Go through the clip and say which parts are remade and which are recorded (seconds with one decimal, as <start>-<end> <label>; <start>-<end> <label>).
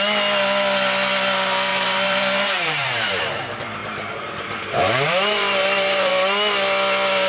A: 0.0-1.7 recorded; 1.7-3.2 remade; 3.2-3.8 recorded; 3.8-6.1 remade; 6.1-7.3 recorded